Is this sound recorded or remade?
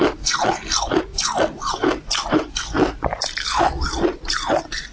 recorded